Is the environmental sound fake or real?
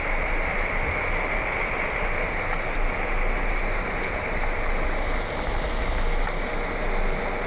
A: real